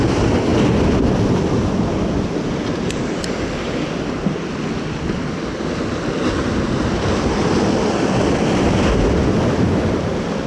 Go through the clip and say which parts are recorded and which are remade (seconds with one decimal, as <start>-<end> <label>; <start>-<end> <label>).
0.0-10.5 recorded